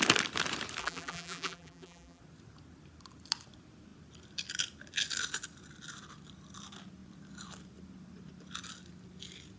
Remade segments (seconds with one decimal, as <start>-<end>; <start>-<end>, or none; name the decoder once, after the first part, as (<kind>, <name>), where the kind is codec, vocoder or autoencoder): 0.8-2.2 (vocoder, BigVGAN v2)